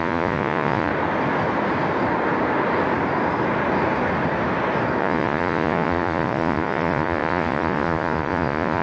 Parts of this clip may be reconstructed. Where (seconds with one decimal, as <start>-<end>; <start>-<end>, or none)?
0.0-0.9; 5.0-8.8